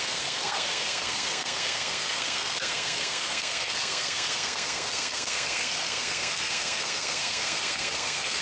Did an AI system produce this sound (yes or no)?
yes